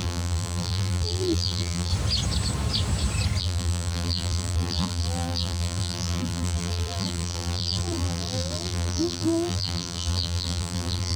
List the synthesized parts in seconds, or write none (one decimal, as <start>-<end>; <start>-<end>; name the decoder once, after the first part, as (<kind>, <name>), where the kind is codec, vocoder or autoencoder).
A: 0.0-1.9 (vocoder, BigVGAN v2); 3.4-11.2